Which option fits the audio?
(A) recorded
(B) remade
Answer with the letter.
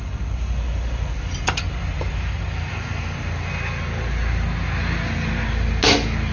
A